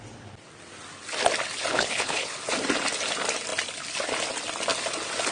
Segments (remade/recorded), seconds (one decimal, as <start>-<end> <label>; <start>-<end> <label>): 0.0-1.7 recorded; 1.7-2.4 remade; 2.4-5.3 recorded